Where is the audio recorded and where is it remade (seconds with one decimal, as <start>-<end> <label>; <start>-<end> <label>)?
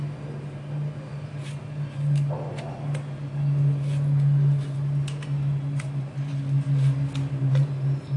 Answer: 0.0-8.2 recorded